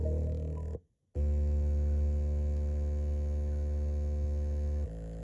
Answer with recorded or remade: recorded